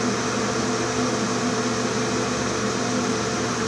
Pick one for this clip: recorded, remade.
recorded